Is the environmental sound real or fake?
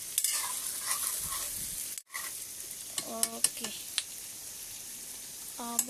real